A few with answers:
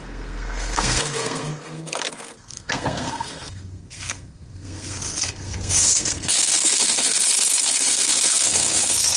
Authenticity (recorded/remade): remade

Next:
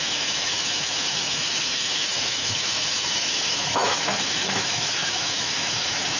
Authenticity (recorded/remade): remade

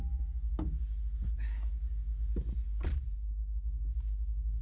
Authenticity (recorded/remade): recorded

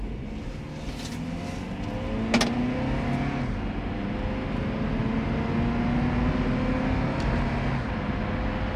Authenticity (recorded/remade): recorded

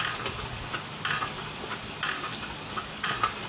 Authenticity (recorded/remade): recorded